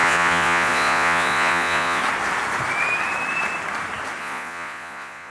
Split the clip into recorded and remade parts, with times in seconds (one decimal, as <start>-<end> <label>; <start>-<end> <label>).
0.0-2.0 remade; 2.0-4.2 recorded; 4.2-5.3 remade